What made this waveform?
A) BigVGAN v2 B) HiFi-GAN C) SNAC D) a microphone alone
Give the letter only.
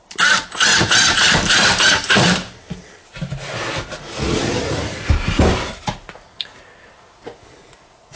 D